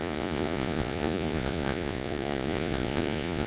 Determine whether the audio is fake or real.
fake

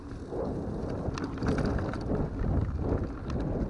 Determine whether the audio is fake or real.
real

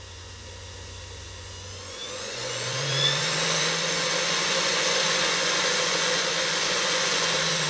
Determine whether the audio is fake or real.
fake